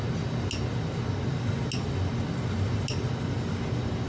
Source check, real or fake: real